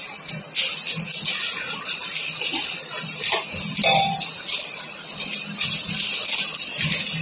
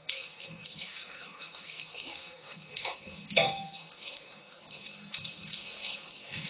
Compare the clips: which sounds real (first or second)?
first